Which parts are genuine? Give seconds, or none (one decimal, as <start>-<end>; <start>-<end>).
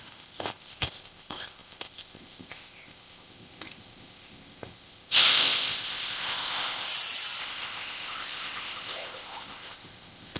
6.9-7.4